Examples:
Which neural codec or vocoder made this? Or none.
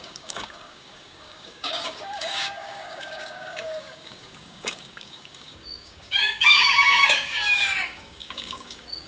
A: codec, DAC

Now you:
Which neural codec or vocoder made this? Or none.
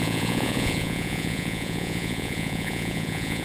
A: vocoder, Vocos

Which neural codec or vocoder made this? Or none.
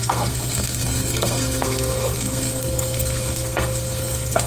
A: codec, SNAC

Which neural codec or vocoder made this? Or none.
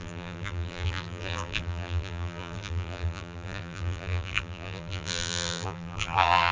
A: vocoder, BigVGAN v2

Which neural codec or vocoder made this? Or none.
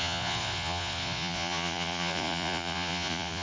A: vocoder, Vocos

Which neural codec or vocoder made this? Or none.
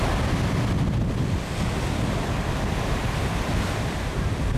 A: none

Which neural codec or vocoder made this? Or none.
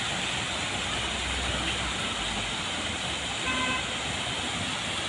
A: none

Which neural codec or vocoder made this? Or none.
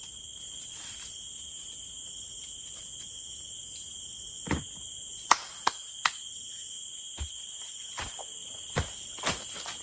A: none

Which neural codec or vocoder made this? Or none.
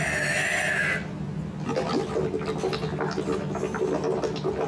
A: none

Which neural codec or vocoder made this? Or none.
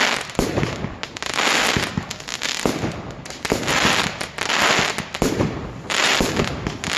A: none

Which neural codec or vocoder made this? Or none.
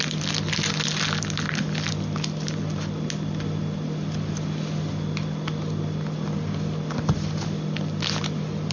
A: none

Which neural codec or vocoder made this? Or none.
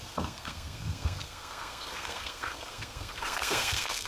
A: codec, SNAC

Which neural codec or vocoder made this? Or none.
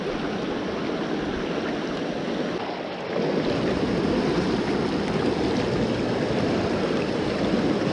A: none